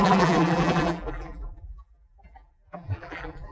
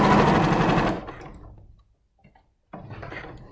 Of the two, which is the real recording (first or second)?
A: second